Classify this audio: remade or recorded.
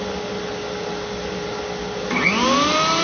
recorded